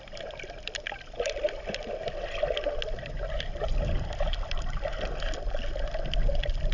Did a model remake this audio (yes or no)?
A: no